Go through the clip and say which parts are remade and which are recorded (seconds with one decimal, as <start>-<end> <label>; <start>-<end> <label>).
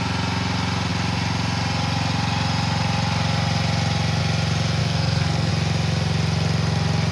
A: 0.0-4.8 recorded; 4.8-5.5 remade; 5.5-7.1 recorded